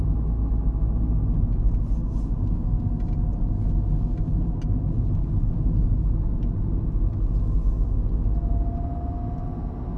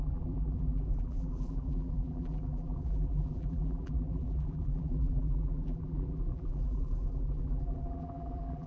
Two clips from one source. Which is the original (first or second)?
first